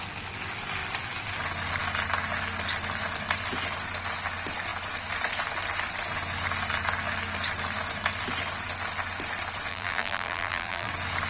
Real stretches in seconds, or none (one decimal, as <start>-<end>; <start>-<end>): 0.0-9.7; 10.9-11.3